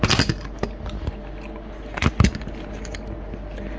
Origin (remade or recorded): recorded